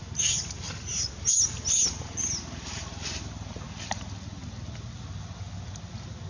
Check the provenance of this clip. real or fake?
real